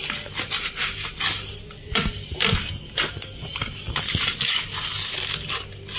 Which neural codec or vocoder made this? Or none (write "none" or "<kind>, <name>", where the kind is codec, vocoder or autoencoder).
none